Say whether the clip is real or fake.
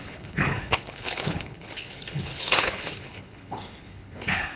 fake